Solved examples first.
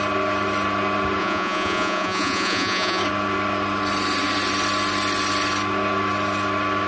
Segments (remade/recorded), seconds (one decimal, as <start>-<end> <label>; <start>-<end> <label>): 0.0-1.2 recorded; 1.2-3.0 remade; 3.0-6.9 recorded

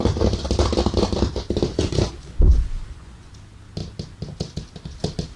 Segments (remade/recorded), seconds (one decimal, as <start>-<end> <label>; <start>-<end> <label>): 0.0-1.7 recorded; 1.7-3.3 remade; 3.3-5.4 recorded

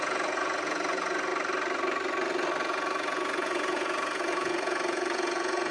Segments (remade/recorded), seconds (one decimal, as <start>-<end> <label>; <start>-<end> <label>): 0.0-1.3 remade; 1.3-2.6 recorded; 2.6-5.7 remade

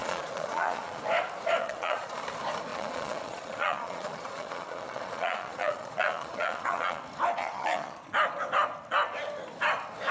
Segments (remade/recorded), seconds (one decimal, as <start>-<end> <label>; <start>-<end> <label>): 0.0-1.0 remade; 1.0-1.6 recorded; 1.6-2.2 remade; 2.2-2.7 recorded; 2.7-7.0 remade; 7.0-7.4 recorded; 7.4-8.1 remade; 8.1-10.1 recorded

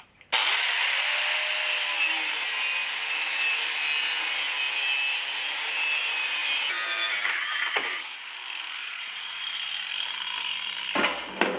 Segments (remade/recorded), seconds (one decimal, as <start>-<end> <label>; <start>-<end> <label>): 0.0-0.4 recorded; 0.4-1.1 remade; 1.1-8.8 recorded; 8.8-9.4 remade; 9.4-11.6 recorded

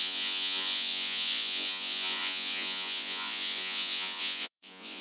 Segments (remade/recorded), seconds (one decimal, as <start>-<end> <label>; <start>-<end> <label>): 0.0-5.0 remade

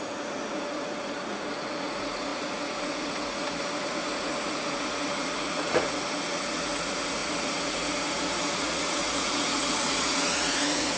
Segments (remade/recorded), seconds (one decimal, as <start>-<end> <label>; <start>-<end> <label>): 0.0-11.0 remade

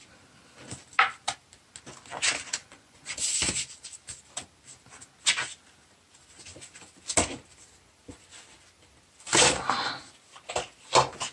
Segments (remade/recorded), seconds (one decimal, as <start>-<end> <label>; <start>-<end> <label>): 0.0-2.6 recorded; 2.6-3.4 remade; 3.4-11.3 recorded